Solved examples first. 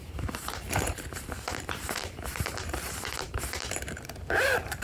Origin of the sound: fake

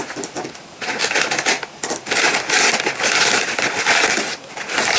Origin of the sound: real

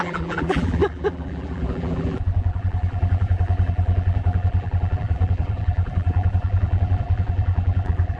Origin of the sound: fake